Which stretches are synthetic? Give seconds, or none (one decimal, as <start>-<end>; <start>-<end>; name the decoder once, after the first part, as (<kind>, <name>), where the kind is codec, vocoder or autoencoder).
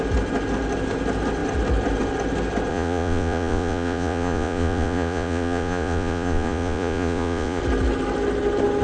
2.7-7.6 (vocoder, Vocos)